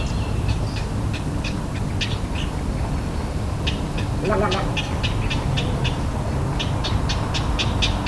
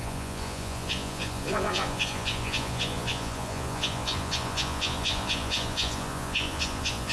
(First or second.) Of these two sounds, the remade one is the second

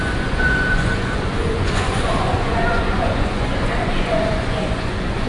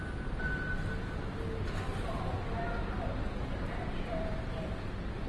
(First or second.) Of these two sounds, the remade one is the first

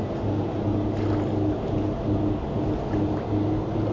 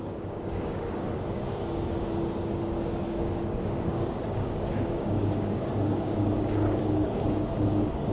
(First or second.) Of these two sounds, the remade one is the second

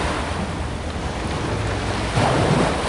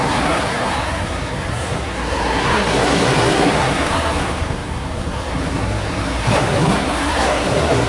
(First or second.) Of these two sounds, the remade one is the second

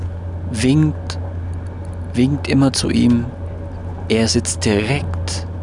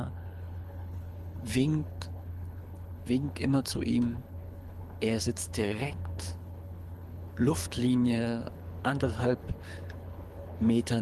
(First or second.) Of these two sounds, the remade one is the second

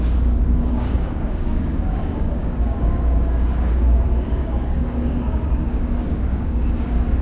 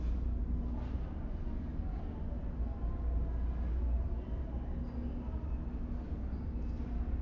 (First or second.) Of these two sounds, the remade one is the first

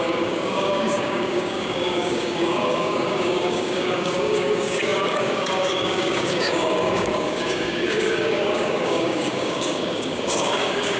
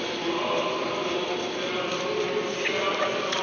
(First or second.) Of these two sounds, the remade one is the first